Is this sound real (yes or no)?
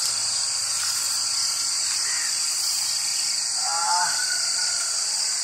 yes